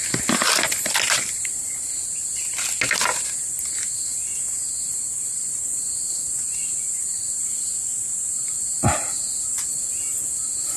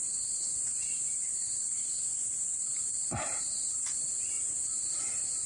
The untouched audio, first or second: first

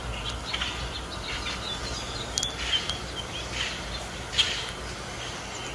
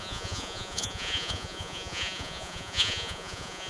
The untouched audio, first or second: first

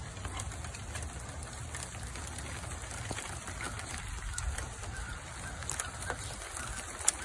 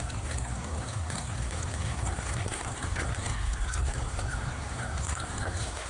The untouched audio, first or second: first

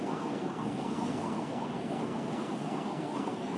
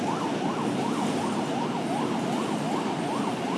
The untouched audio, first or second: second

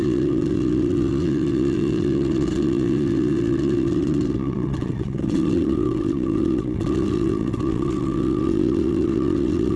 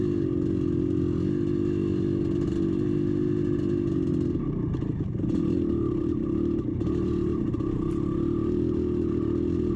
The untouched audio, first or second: second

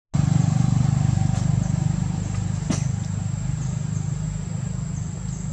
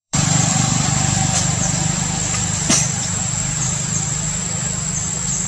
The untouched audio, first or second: first